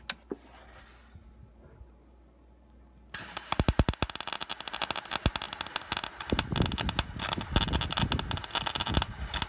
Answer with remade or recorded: recorded